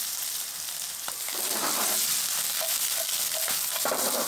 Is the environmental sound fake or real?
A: fake